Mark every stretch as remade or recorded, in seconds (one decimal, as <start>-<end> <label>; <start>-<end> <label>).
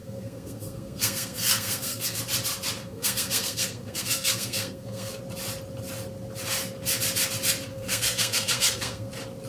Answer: 0.0-2.2 remade; 2.2-2.8 recorded; 2.8-5.2 remade; 5.2-7.7 recorded; 7.7-9.1 remade; 9.1-9.5 recorded